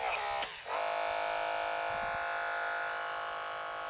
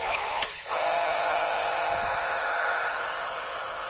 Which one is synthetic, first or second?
second